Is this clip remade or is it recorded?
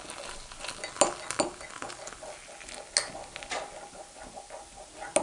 recorded